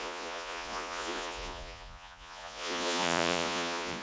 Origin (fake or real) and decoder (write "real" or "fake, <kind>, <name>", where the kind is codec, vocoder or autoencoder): fake, vocoder, Vocos